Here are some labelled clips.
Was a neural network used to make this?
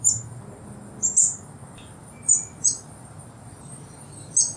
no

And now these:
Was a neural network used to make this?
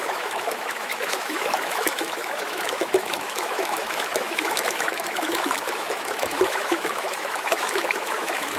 yes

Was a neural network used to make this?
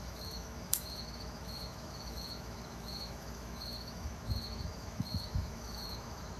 yes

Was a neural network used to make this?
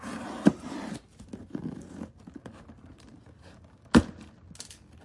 no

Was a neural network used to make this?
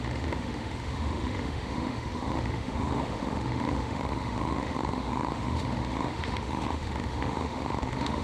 yes